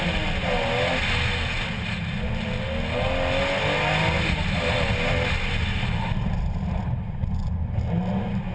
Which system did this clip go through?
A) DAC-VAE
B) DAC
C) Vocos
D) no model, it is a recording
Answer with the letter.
D